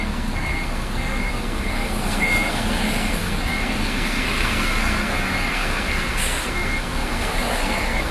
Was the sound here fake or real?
fake